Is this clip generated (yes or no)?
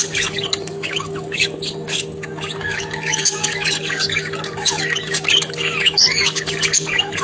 yes